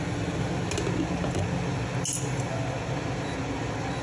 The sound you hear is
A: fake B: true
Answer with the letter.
B